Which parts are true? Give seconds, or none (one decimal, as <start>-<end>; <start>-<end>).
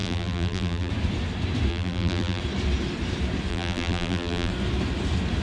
0.9-1.7; 2.4-3.5; 4.5-5.4